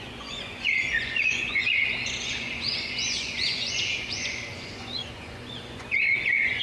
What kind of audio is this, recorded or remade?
remade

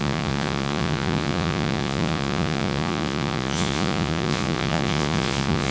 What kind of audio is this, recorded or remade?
remade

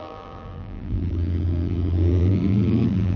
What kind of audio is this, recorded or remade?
remade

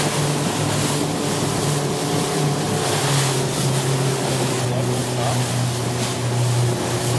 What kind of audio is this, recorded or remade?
recorded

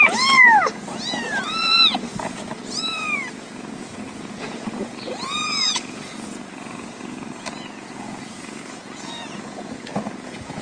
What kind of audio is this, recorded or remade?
remade